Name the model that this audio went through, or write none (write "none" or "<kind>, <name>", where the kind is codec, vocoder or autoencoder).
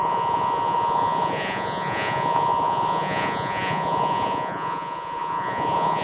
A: vocoder, Vocos